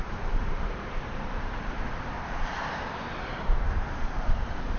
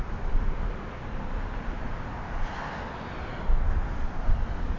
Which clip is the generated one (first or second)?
first